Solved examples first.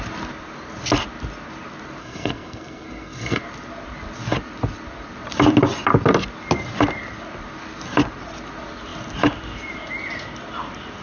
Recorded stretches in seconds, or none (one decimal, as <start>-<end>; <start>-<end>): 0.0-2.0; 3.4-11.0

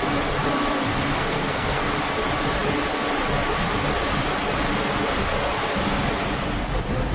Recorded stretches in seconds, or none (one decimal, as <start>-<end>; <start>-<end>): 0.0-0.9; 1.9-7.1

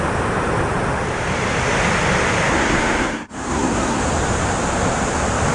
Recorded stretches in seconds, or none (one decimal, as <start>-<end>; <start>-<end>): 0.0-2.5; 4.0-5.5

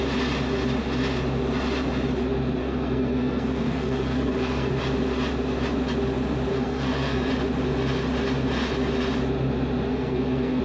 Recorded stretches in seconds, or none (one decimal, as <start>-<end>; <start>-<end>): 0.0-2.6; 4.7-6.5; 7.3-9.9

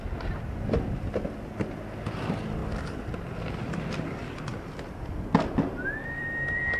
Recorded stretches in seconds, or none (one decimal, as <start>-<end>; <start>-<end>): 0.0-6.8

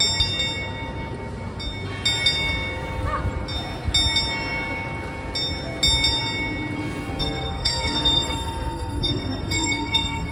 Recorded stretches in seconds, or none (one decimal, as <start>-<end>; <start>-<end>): 0.0-7.2

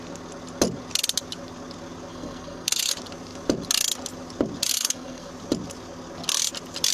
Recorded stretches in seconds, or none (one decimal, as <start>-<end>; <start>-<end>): 0.0-2.1; 2.9-4.7; 5.3-6.9

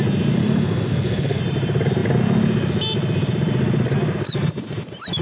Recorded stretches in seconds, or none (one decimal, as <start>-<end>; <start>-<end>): 0.0-0.4; 1.4-5.2